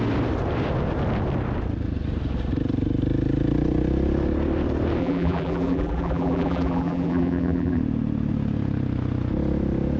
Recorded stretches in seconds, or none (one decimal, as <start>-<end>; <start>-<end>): 0.0-5.0; 7.8-10.0